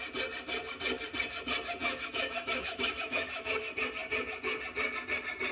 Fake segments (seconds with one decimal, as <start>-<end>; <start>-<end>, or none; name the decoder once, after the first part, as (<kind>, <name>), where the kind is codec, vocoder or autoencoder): 1.8-3.6 (autoencoder, DAC-VAE)